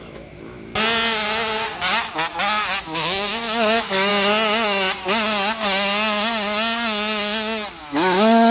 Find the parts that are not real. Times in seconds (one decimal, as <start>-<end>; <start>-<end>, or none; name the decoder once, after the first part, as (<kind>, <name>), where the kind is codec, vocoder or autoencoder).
0.0-0.7 (autoencoder, DAC-VAE); 2.8-4.1; 7.8-8.5